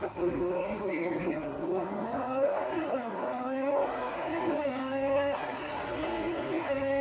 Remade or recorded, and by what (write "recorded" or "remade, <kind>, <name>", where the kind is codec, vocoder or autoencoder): remade, codec, SNAC